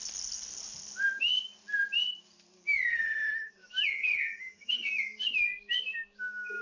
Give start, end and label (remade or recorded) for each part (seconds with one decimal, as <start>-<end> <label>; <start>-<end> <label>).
0.0-2.9 recorded; 2.9-3.5 remade; 3.5-3.9 recorded; 3.9-4.9 remade; 4.9-6.6 recorded